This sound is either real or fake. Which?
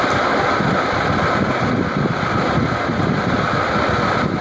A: real